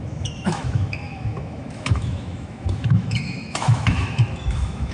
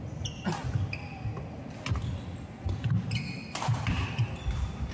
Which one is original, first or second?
second